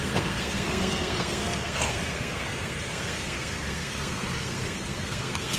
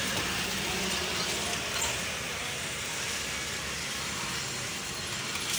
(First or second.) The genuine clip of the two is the second